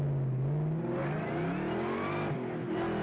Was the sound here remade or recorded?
recorded